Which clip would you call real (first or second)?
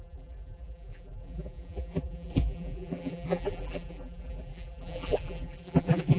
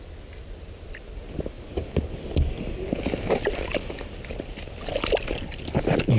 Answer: second